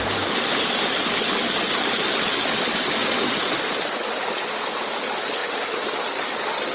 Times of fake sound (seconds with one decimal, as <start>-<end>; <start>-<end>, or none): none